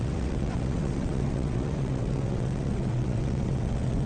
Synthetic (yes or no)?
yes